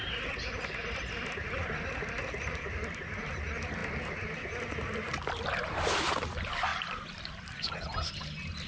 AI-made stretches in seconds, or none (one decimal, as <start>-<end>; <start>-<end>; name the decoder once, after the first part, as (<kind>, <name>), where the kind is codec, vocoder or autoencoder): none